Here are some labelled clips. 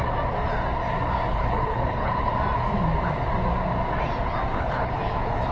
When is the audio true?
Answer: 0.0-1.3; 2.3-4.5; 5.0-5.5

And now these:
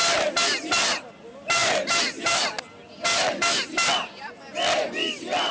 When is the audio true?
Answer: 0.0-5.5

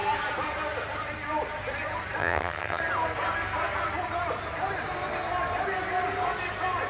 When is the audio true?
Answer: 0.0-2.2; 2.8-6.9

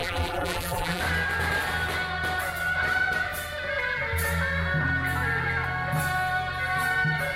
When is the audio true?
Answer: 1.0-7.4

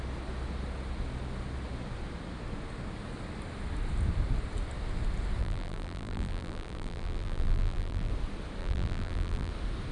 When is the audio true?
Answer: 0.0-5.4; 8.1-8.6; 9.5-9.9